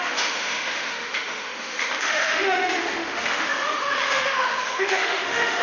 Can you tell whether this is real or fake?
fake